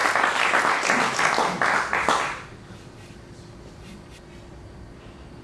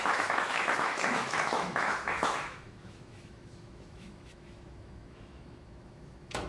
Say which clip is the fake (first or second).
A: second